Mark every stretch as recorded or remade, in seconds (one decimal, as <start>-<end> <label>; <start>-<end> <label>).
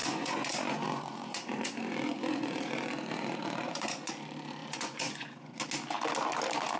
0.0-4.1 remade; 4.1-4.6 recorded; 4.6-5.6 remade; 5.6-6.8 recorded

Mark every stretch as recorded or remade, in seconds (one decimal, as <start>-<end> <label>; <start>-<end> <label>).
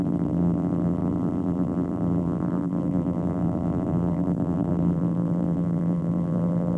0.0-6.8 remade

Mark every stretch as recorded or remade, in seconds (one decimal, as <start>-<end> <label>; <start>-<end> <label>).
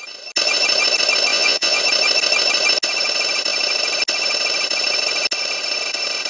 0.0-1.3 recorded; 1.3-1.8 remade; 1.8-6.3 recorded